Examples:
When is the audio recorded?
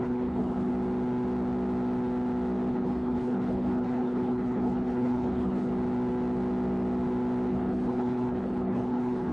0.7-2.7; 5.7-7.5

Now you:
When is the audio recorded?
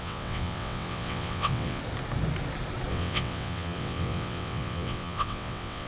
1.8-2.9